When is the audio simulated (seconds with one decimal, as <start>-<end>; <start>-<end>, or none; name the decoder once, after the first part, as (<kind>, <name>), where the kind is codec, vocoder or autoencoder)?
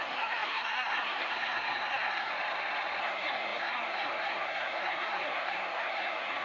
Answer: 0.0-2.3 (codec, SNAC); 3.0-6.4